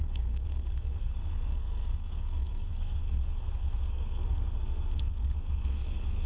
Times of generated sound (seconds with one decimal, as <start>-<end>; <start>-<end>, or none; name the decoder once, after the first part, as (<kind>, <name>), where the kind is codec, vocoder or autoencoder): 0.0-6.3 (codec, SNAC)